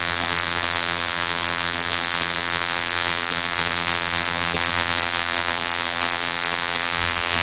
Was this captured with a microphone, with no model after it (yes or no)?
no